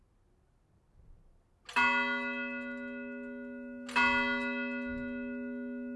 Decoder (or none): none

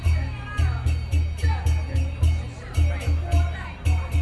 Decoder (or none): none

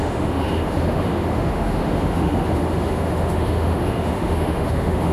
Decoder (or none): autoencoder, DAC-VAE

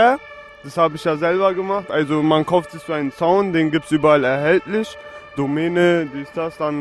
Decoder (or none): none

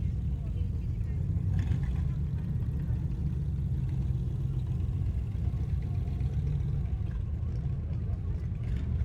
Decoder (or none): none